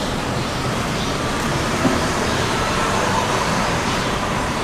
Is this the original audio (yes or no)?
no